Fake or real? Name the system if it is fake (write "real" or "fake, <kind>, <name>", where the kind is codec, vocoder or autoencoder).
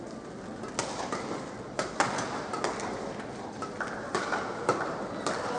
real